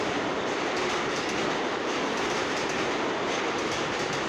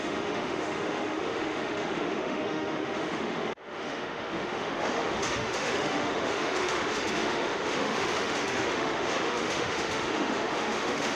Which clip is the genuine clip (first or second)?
first